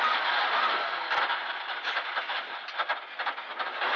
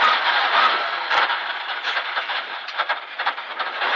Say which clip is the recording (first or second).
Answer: first